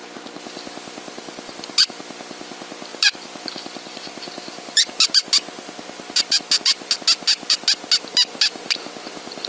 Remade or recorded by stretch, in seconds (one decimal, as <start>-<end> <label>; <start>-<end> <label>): 0.0-2.9 recorded; 2.9-5.1 remade; 5.1-9.5 recorded